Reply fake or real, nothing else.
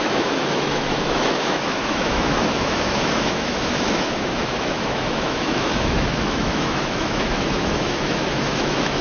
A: fake